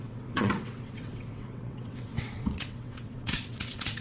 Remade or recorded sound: remade